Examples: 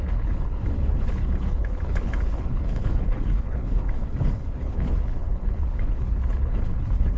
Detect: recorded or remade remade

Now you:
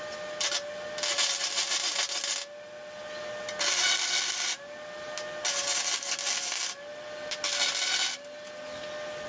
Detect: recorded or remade recorded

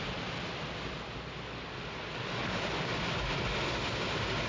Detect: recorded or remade recorded